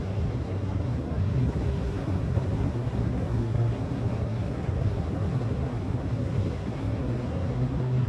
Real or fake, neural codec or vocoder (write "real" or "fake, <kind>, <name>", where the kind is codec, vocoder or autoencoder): fake, codec, SNAC